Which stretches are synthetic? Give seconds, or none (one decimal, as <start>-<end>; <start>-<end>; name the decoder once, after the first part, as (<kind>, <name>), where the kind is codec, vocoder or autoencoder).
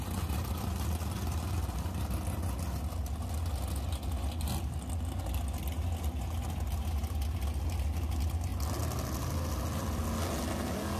none